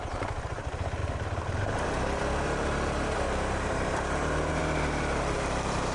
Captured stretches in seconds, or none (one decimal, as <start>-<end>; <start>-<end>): none